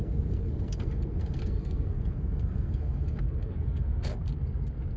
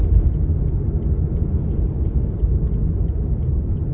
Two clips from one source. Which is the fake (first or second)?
first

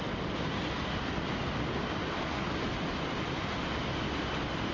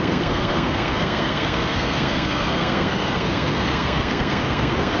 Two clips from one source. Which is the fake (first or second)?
second